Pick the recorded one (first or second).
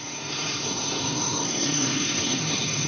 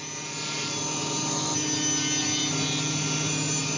second